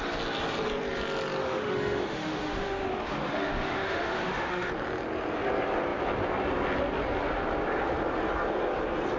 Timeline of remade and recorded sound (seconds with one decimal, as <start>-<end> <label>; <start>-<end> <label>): 0.0-1.4 recorded; 1.4-4.7 remade; 4.7-9.2 recorded